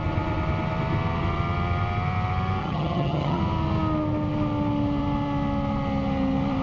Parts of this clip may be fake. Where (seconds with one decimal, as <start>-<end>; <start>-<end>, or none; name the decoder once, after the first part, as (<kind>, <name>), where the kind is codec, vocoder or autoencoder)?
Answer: 2.6-3.4 (vocoder, HiFi-GAN)